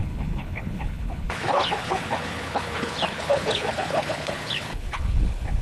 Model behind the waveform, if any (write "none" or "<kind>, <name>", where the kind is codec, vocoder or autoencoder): codec, HILCodec